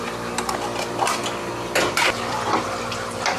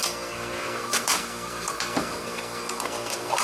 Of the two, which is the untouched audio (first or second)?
first